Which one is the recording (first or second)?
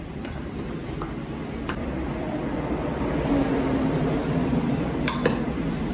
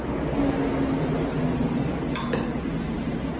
second